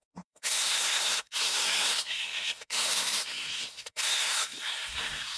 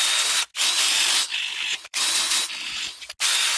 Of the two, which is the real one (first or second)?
second